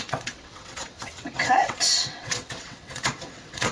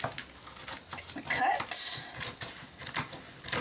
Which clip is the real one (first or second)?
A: second